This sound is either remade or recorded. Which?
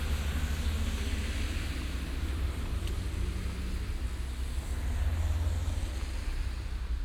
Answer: recorded